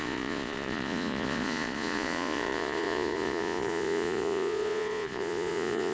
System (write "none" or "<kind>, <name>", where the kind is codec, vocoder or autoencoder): vocoder, Vocos